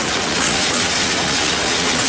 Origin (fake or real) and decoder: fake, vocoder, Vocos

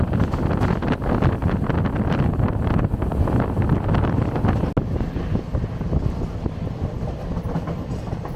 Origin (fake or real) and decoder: real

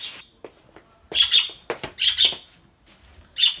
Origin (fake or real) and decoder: real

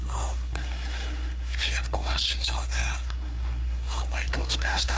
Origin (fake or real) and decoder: fake, codec, SNAC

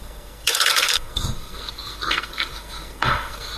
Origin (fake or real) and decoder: fake, codec, SNAC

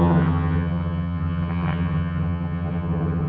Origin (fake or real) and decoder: fake, vocoder, HiFi-GAN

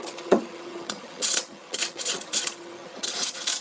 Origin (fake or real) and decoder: fake, vocoder, HiFi-GAN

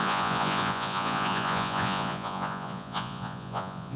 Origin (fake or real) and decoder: fake, vocoder, Vocos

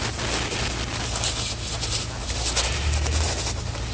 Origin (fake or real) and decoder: real